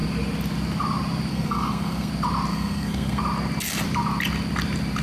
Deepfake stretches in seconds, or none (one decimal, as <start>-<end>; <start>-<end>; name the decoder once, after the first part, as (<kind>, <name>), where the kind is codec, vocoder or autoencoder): 1.3-2.1 (codec, SNAC); 2.5-3.2